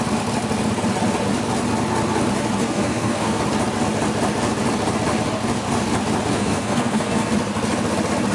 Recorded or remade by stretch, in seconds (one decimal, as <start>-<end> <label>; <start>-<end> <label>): 0.0-2.6 recorded; 2.6-3.4 remade; 3.4-6.3 recorded; 6.3-7.3 remade; 7.3-8.3 recorded